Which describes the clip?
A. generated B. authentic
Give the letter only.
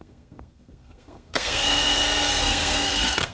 A